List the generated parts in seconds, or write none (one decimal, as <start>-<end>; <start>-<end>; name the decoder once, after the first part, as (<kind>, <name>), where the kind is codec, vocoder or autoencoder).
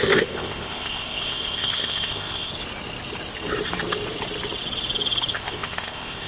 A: 0.0-2.5 (codec, ZipCodec); 5.3-6.3